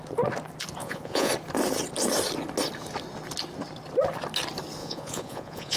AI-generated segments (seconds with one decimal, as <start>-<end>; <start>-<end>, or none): 0.8-1.3; 4.8-5.8